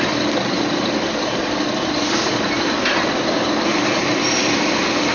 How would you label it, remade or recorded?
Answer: recorded